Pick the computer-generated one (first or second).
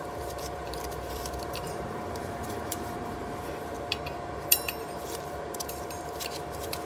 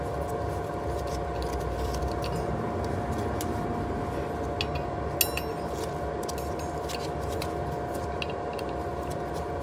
first